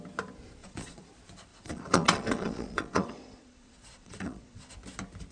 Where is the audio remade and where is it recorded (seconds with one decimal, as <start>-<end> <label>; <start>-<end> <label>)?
0.0-0.6 recorded; 0.6-1.1 remade; 1.1-1.5 recorded; 1.5-4.7 remade; 4.7-5.3 recorded